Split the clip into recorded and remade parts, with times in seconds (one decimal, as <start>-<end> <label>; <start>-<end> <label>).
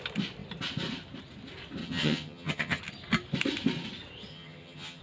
0.0-1.8 recorded; 1.8-2.8 remade; 2.8-4.3 recorded; 4.3-5.0 remade